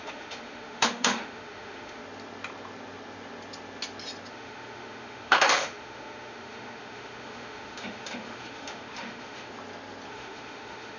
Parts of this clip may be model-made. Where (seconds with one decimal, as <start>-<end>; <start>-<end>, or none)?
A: 0.0-2.0; 4.3-9.5; 10.1-11.0